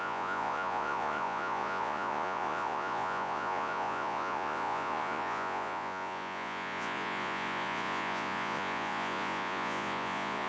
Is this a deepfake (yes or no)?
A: yes